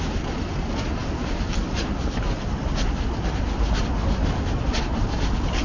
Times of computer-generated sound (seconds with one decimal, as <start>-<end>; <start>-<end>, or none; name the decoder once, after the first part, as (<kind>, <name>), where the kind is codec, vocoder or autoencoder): none

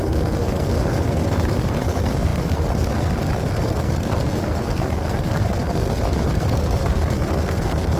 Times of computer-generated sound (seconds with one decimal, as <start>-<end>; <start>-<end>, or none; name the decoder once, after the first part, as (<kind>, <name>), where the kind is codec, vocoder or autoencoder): 0.0-8.0 (codec, SNAC)

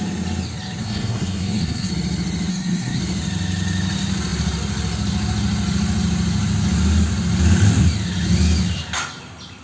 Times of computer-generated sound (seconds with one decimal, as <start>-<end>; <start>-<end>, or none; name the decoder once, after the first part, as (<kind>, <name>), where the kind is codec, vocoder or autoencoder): 0.8-1.9 (codec, SNAC); 2.5-3.0

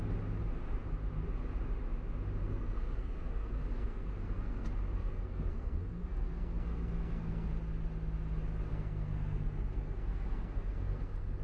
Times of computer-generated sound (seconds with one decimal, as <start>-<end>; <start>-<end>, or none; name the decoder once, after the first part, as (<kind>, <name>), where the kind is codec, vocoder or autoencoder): 2.4-7.5 (codec, SNAC); 8.7-11.4

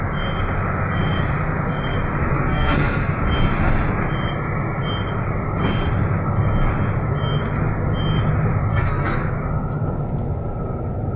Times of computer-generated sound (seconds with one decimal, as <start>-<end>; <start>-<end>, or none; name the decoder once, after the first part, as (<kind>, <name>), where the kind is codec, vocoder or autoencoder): 2.3-3.1 (codec, SNAC); 8.7-9.3

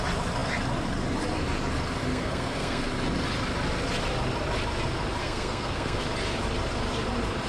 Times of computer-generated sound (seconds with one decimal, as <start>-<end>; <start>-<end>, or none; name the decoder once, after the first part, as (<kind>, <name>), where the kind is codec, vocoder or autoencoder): 2.1-2.8 (codec, SNAC); 5.2-6.0

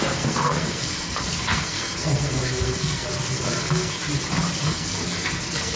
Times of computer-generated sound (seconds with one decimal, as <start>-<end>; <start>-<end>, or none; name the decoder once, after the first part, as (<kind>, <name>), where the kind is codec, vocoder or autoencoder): 0.0-4.0 (codec, SNAC); 4.6-5.8